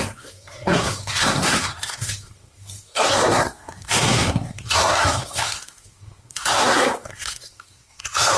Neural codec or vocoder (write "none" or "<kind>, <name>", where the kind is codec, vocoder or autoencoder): codec, SNAC